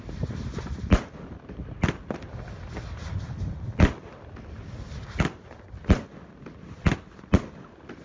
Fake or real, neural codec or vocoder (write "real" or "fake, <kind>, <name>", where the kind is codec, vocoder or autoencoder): real